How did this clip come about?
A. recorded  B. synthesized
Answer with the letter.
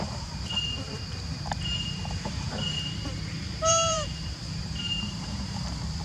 B